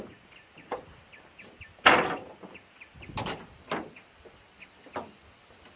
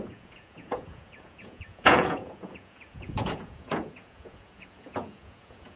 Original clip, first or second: first